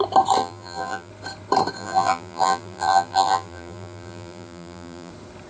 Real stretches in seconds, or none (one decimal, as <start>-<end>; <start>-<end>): 0.0-0.4; 1.1-1.8; 5.1-5.5